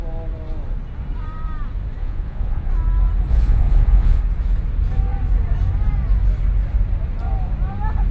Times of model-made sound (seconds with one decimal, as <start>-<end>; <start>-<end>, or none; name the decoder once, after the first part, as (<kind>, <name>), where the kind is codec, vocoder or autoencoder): 2.0-2.7 (vocoder, Vocos); 3.3-4.2